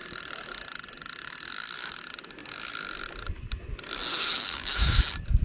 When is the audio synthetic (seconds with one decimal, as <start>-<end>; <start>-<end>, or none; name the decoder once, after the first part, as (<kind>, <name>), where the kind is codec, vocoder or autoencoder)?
4.1-5.0 (autoencoder, DAC-VAE)